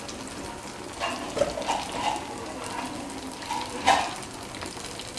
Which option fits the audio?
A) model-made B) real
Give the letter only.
B